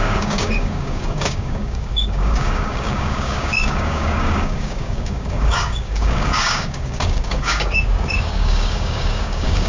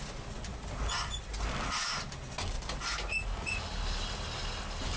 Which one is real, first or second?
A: second